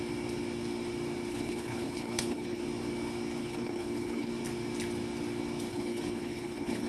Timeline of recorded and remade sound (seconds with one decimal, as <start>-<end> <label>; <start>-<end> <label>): 0.0-1.3 recorded; 1.3-2.6 remade; 2.6-3.4 recorded; 3.4-4.3 remade; 4.3-5.7 recorded; 5.7-6.9 remade

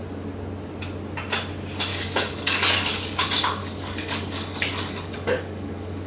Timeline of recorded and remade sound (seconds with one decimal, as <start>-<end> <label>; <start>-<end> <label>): 0.0-1.9 recorded; 1.9-3.2 remade; 3.2-3.6 recorded; 3.6-6.1 remade

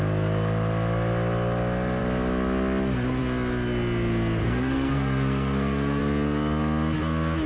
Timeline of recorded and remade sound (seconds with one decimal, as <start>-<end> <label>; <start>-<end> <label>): 0.0-4.4 recorded; 4.4-6.0 remade; 6.0-7.5 recorded

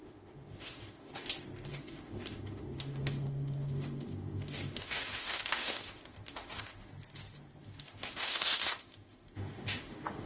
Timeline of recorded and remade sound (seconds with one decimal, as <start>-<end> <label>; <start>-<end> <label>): 0.0-1.1 remade; 1.1-1.7 recorded; 1.7-6.9 remade; 6.9-7.6 recorded; 7.6-10.3 remade

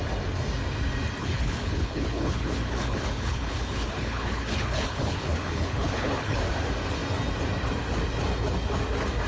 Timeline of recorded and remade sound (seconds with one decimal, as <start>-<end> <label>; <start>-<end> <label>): 0.0-1.2 recorded; 1.2-6.4 remade; 6.4-9.3 recorded

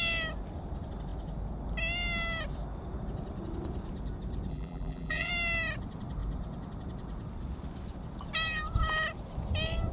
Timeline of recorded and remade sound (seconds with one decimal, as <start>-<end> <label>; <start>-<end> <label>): 0.0-4.5 recorded; 4.5-5.3 remade; 5.3-9.9 recorded

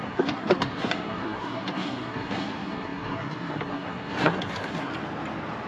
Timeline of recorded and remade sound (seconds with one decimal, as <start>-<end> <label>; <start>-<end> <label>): 0.0-4.9 remade; 4.9-5.7 recorded

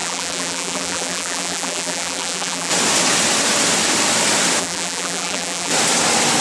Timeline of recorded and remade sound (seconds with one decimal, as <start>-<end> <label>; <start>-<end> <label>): 0.0-2.7 remade; 2.7-4.6 recorded; 4.6-5.7 remade; 5.7-6.4 recorded